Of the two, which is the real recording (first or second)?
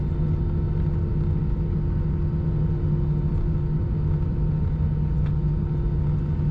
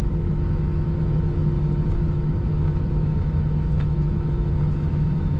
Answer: first